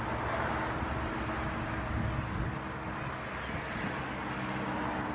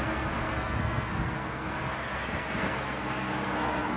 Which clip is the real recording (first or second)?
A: first